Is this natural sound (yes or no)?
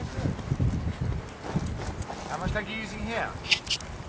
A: yes